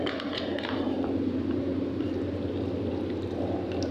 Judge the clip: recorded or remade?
recorded